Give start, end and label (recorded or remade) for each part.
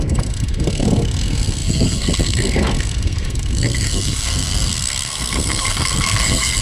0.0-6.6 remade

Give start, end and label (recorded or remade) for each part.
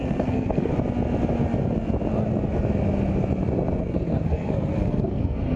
0.0-0.7 remade; 0.7-3.8 recorded; 3.8-5.6 remade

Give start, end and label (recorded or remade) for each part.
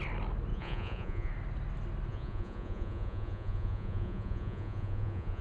0.0-0.5 recorded; 0.5-1.3 remade; 1.3-2.1 recorded; 2.1-5.4 remade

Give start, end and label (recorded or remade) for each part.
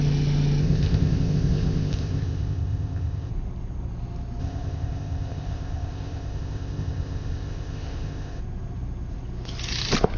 0.0-0.6 recorded; 0.6-3.3 remade; 3.3-4.4 recorded; 4.4-8.4 remade; 8.4-10.2 recorded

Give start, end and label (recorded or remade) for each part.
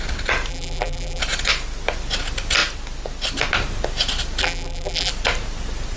0.0-0.5 recorded; 0.5-1.2 remade; 1.2-4.4 recorded; 4.4-5.1 remade; 5.1-6.0 recorded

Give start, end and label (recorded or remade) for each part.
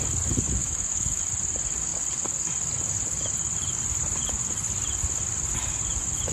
0.0-0.6 recorded; 0.6-1.2 remade; 1.2-6.3 recorded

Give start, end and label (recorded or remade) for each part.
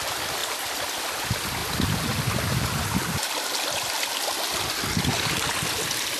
0.0-6.2 recorded